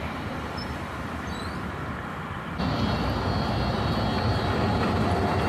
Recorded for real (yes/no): yes